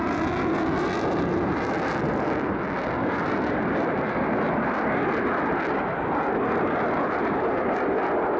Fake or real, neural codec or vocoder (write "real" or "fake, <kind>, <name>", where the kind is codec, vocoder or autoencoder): real